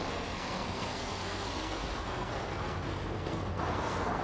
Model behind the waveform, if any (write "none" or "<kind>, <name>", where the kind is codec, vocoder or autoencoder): codec, SNAC